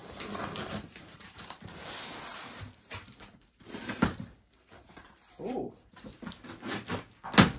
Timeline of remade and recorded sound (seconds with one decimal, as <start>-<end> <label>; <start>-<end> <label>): 0.0-1.6 remade; 1.6-2.3 recorded; 2.3-6.2 remade; 6.2-7.6 recorded